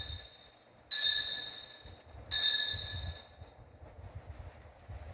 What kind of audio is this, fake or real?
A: real